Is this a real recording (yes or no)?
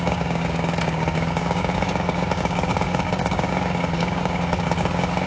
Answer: no